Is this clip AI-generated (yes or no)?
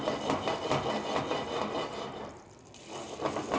no